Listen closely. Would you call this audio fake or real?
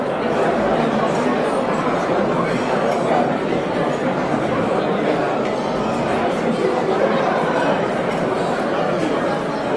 real